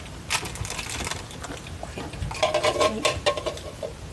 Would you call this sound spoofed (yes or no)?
no